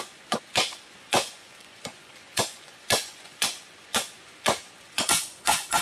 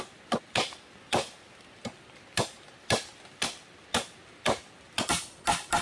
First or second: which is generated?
first